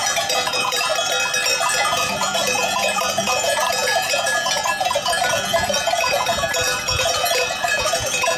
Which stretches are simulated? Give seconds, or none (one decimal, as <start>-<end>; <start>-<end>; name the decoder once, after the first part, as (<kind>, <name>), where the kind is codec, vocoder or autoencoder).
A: 0.0-0.9 (vocoder, Vocos); 1.7-8.4